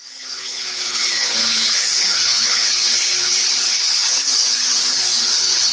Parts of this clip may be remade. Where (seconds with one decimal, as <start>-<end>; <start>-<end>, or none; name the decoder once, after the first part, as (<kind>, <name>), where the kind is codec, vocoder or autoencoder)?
0.0-5.7 (codec, HILCodec)